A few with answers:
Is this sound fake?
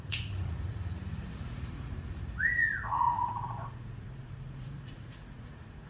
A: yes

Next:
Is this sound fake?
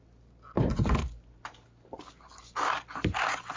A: no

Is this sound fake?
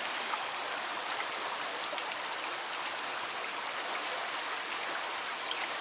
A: no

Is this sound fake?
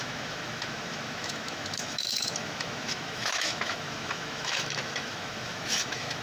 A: yes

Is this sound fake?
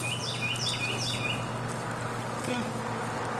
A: no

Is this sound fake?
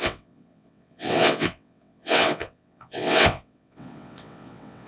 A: yes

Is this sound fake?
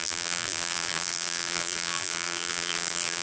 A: yes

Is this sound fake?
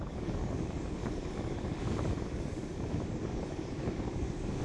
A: yes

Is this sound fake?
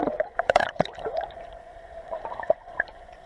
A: yes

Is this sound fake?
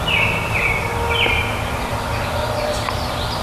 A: no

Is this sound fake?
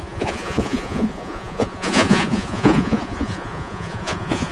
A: yes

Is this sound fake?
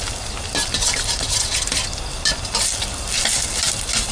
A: no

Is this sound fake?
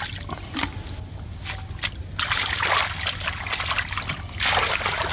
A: no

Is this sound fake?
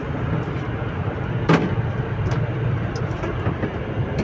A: no